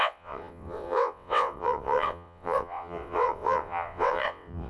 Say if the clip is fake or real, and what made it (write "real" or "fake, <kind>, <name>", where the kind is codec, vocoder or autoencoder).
fake, vocoder, WaveNeXt